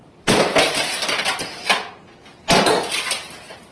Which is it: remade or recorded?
recorded